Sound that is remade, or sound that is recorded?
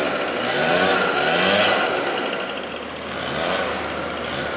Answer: recorded